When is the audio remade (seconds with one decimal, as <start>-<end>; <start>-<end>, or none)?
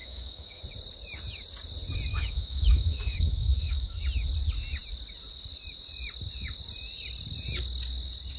0.0-0.6; 2.1-4.0